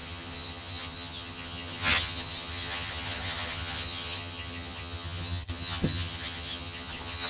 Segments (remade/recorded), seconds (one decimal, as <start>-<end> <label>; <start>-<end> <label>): 0.0-7.3 remade